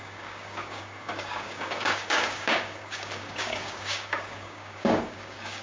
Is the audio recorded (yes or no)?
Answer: no